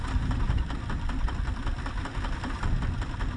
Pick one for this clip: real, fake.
fake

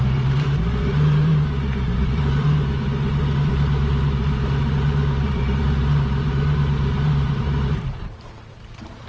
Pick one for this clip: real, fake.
fake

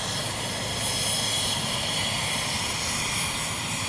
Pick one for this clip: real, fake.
real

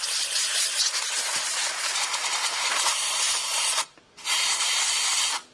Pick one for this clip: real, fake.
real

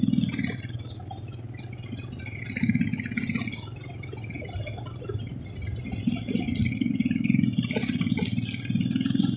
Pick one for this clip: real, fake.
real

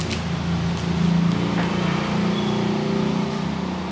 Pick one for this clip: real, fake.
real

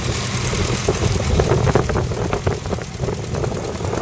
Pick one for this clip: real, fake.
real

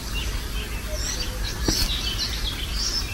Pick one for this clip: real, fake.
real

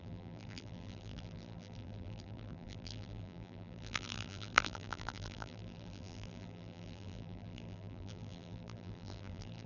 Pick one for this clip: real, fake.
fake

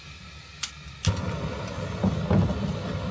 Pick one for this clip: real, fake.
real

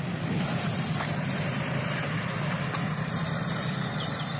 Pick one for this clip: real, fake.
fake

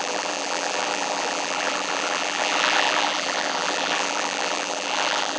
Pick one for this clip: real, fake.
fake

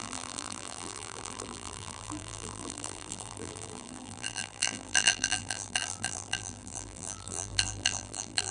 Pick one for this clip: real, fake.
fake